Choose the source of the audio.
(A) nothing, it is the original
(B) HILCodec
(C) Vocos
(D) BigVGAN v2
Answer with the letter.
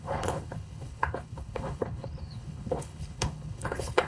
B